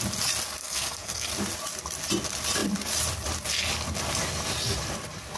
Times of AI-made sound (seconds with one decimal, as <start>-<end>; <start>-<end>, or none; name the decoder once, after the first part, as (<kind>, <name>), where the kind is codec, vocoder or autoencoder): 0.6-1.3 (codec, SNAC)